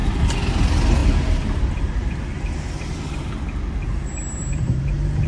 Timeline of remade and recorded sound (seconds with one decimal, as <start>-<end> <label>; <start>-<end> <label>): 0.0-5.3 recorded